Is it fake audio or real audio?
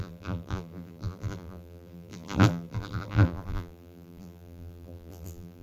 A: fake